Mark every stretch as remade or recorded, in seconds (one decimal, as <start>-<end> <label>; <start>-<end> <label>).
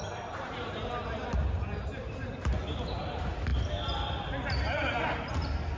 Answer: 0.0-5.8 recorded